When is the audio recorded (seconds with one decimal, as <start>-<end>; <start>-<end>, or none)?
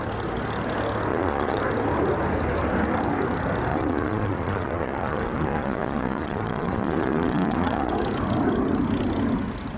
0.0-1.1; 1.6-3.7; 7.9-9.8